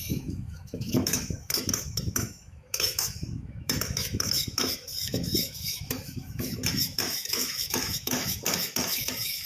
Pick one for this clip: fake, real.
fake